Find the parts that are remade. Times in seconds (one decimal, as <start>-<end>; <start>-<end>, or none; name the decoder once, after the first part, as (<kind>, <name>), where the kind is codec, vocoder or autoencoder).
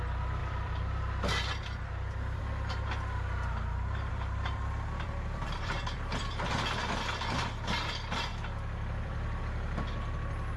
0.4-2.4 (vocoder, BigVGAN v2); 4.1-6.5; 8.3-9.4